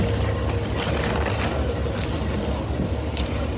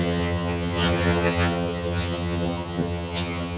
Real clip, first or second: first